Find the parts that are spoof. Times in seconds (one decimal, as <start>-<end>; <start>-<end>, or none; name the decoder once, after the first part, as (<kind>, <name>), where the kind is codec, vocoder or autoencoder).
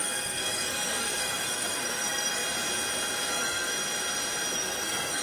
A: 0.0-2.4 (codec, SNAC); 3.3-3.7; 4.5-5.2